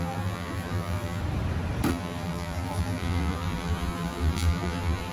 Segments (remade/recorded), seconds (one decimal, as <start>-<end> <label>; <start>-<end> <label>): 0.0-1.2 remade; 1.2-1.9 recorded; 1.9-5.1 remade